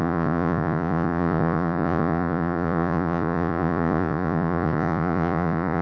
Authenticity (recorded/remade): remade